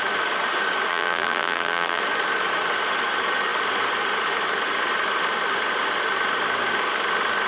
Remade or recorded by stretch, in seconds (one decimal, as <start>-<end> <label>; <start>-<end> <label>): 0.0-0.9 recorded; 0.9-2.0 remade; 2.0-7.5 recorded